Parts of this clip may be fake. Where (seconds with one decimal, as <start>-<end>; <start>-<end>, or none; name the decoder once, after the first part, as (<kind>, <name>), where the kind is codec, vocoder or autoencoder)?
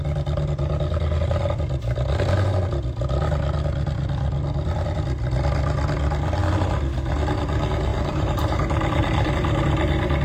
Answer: 7.9-9.3 (vocoder, BigVGAN v2)